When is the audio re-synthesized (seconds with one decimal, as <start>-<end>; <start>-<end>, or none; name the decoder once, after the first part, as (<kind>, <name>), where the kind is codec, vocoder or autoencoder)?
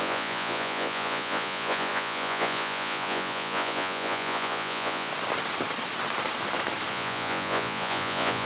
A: 0.0-5.1 (vocoder, Vocos); 6.9-8.4